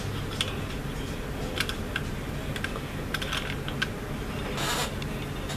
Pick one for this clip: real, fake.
real